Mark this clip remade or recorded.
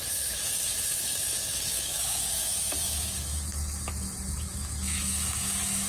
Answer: remade